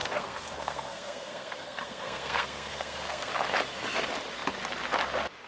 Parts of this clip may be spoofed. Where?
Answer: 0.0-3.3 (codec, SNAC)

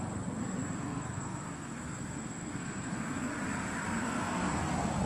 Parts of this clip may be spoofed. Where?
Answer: 0.8-3.3 (codec, SNAC); 4.0-4.6

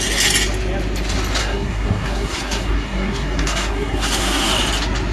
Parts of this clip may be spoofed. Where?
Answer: 1.4-4.5 (codec, SNAC)

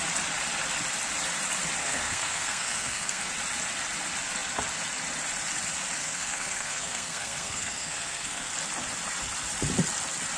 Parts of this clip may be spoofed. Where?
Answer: 1.8-3.3 (codec, SNAC); 6.0-8.5

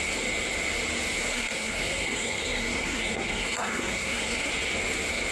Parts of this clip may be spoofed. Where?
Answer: 1.3-4.5 (codec, SNAC)

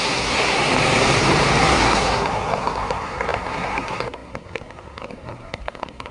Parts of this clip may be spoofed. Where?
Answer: 0.0-0.6 (codec, SNAC); 1.6-6.1